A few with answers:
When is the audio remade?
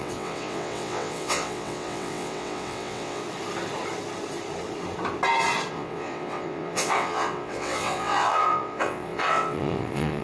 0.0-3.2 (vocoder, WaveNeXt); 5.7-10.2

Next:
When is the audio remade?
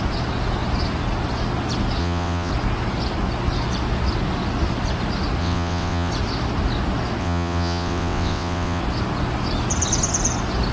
2.0-2.5 (vocoder, WaveNeXt); 5.4-6.1; 7.2-8.8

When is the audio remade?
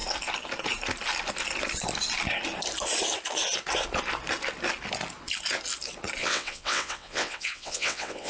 6.2-8.3 (vocoder, WaveNeXt)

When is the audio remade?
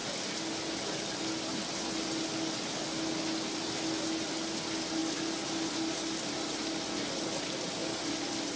none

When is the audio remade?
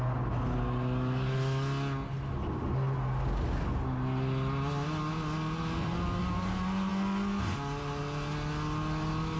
none